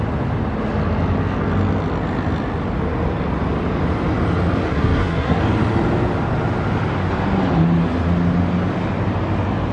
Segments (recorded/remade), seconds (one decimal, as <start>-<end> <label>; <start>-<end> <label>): 0.0-4.7 recorded; 4.7-5.4 remade; 5.4-9.7 recorded